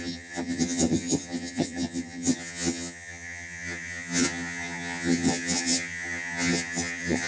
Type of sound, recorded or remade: remade